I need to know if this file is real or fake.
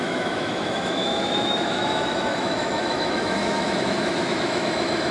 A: fake